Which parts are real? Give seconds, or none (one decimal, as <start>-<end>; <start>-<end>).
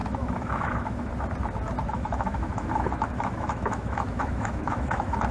1.1-1.8